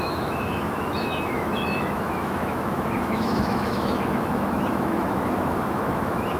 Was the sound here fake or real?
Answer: fake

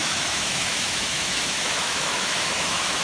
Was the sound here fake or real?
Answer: fake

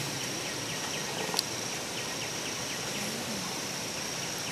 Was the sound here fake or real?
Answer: real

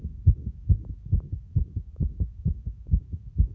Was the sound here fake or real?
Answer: fake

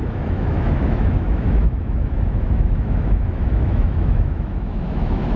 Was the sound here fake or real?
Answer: fake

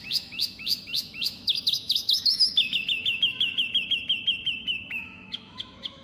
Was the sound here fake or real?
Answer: fake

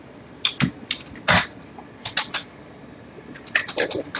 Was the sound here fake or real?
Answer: real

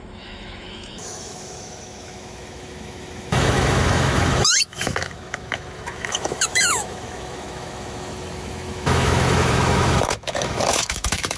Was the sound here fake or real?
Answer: fake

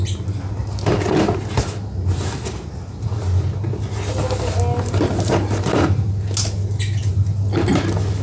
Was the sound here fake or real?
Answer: real